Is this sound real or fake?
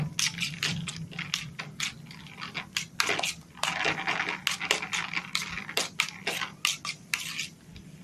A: real